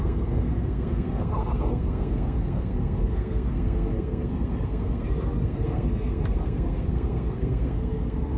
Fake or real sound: fake